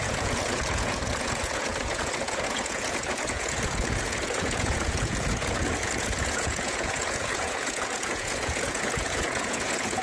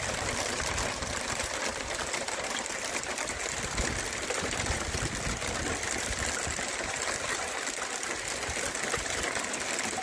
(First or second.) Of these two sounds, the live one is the second